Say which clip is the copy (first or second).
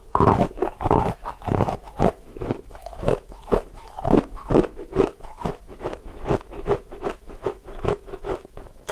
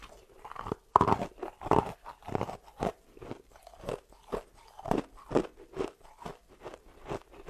first